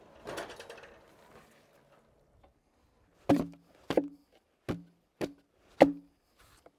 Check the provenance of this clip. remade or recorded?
recorded